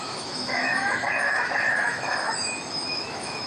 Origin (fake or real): fake